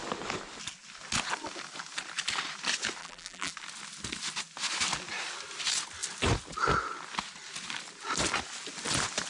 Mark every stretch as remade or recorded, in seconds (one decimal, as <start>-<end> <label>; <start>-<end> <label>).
0.0-3.0 recorded; 3.0-3.5 remade; 3.5-9.3 recorded